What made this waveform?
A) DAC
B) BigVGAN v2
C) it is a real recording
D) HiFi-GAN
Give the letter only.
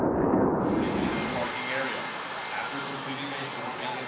C